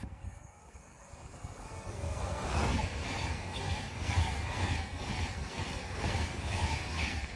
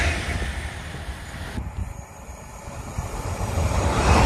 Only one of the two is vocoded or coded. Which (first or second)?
first